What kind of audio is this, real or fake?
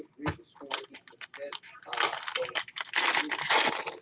real